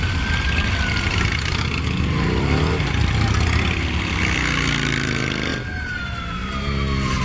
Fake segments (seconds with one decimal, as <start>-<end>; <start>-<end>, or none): none